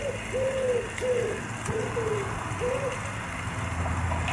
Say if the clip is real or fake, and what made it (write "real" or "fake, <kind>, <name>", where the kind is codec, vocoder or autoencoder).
real